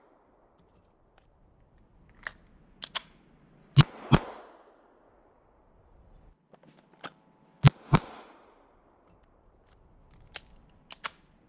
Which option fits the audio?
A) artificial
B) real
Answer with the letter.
B